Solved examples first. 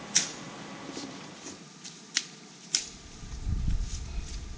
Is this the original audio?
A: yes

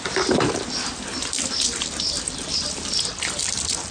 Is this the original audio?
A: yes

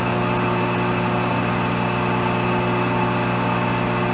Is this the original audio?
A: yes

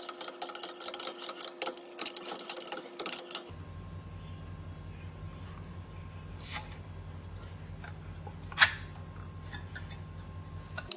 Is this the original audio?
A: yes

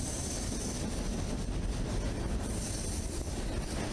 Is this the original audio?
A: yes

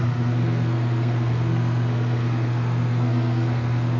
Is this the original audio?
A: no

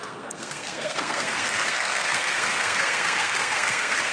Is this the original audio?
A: no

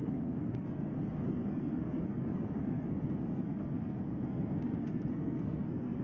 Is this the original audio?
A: no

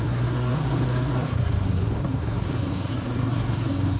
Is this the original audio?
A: no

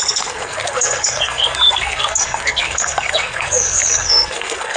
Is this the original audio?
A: no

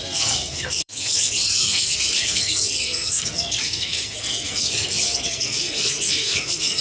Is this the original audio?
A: no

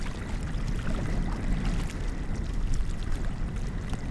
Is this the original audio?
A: yes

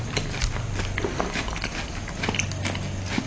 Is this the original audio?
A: yes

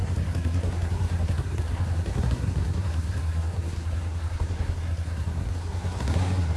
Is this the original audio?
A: no